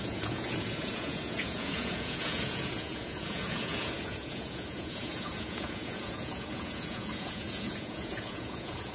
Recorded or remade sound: remade